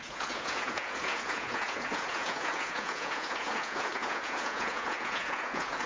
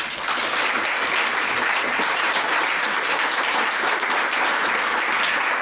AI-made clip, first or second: first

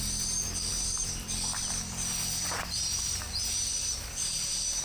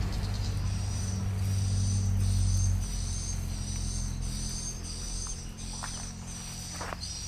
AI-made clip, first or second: first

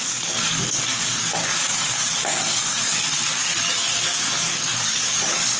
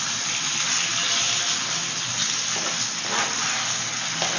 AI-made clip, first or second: first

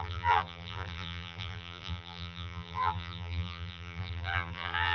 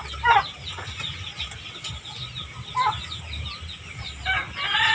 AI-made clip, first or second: first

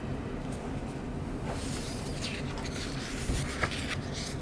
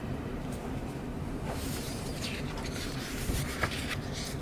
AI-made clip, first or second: second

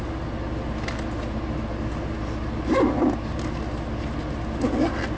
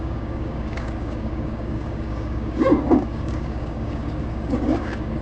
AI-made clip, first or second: second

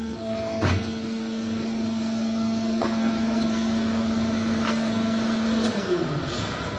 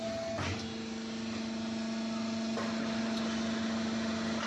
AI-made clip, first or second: first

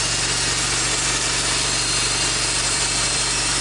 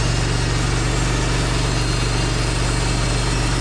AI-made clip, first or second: first